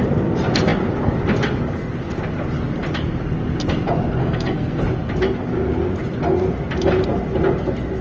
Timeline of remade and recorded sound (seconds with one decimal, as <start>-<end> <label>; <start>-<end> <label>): 0.0-4.2 recorded; 4.2-4.8 remade; 4.8-8.0 recorded